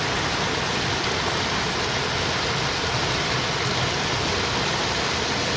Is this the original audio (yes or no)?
yes